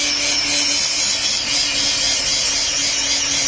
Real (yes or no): yes